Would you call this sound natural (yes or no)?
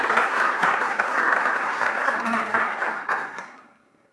no